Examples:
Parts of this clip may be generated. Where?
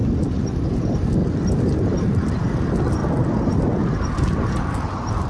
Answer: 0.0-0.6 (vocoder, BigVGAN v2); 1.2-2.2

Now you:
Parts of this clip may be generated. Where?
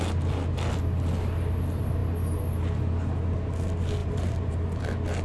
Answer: 4.0-4.6 (vocoder, BigVGAN v2)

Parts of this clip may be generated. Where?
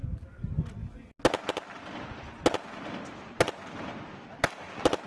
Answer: none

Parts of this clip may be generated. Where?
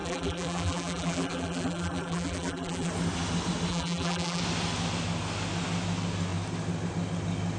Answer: 0.0-2.9 (vocoder, BigVGAN v2); 3.7-4.4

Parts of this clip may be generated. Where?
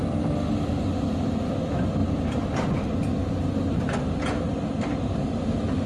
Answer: 2.0-4.7 (vocoder, BigVGAN v2)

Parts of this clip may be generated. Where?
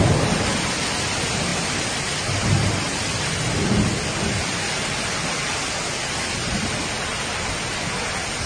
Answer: none